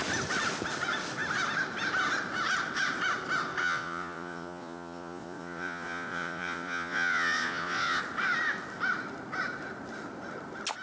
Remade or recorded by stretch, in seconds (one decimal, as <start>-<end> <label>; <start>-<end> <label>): 0.0-3.6 recorded; 3.6-8.0 remade; 8.0-10.8 recorded